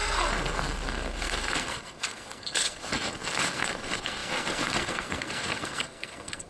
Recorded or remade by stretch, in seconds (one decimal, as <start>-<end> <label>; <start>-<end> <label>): 0.0-6.5 remade

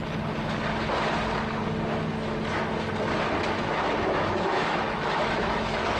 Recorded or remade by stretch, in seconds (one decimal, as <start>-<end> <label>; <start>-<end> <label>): 0.0-3.6 recorded; 3.6-6.0 remade

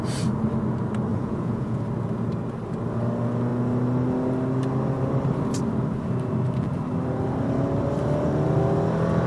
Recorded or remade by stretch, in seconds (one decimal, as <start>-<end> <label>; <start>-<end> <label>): 0.0-1.1 recorded; 1.1-1.8 remade; 1.8-9.3 recorded

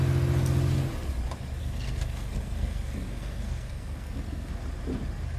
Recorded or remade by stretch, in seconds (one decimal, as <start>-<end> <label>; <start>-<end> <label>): 0.0-1.6 recorded; 1.6-4.5 remade; 4.5-5.4 recorded

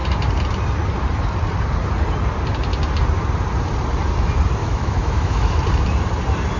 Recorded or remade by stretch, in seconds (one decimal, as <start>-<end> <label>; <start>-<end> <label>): 0.0-4.6 recorded; 4.6-5.6 remade; 5.6-6.6 recorded

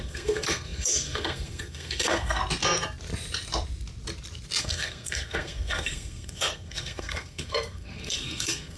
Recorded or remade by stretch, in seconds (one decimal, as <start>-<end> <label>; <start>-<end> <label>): 0.0-2.4 remade; 2.4-4.6 recorded; 4.6-8.8 remade